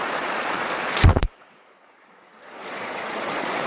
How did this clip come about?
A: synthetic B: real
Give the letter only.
A